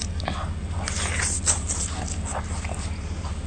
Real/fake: real